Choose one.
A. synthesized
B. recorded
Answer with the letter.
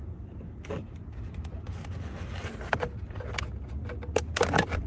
B